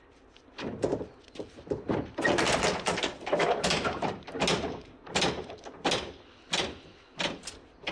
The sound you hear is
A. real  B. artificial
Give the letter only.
A